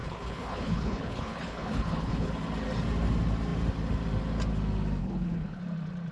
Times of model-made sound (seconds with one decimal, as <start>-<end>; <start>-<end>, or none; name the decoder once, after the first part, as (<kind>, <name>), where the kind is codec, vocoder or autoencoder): 0.0-2.3 (codec, HILCodec); 5.0-5.6